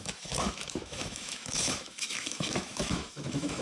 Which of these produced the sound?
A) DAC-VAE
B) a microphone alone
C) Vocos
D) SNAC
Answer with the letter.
A